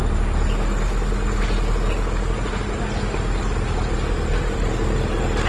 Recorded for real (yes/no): yes